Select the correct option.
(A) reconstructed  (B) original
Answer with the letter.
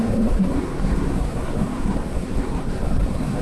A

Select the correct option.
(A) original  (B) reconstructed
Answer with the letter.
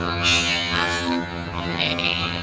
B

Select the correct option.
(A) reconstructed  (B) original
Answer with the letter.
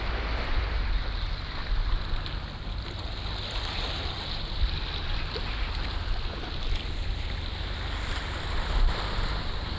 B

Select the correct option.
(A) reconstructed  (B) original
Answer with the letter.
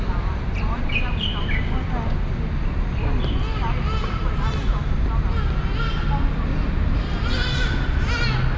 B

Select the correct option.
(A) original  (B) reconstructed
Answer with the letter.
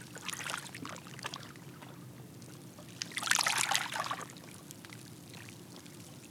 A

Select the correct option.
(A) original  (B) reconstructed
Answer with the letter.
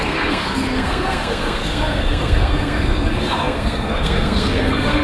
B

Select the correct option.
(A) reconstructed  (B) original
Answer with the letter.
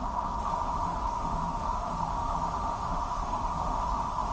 A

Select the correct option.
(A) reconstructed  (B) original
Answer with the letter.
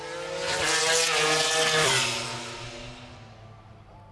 B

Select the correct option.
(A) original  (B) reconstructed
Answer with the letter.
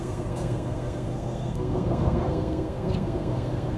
B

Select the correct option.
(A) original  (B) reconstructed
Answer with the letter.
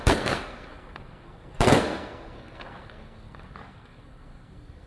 B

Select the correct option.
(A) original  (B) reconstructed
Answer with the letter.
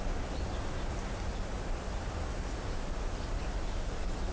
A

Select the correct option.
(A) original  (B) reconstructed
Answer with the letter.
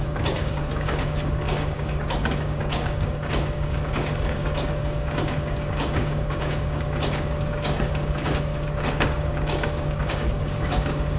B